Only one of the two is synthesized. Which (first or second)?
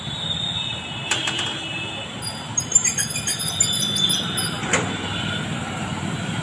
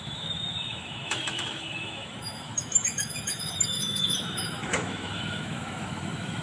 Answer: second